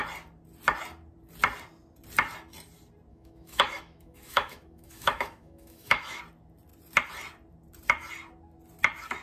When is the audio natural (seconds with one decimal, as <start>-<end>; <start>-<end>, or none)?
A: 0.0-3.1; 6.2-9.2

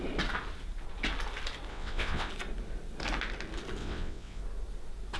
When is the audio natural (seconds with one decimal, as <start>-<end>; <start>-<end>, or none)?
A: 0.0-1.7; 2.3-3.8; 4.4-5.2

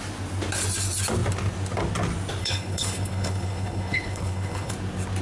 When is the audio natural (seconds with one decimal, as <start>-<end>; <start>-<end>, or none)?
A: 0.0-2.4; 4.7-5.2

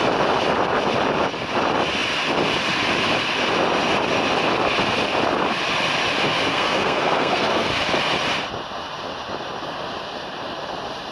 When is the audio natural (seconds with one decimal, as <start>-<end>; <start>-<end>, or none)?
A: 0.0-6.5; 7.7-11.1